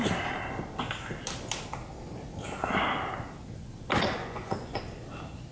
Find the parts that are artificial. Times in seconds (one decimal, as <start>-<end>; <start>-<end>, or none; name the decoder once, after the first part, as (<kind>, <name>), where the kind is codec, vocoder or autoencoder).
4.2-4.8 (vocoder, Vocos)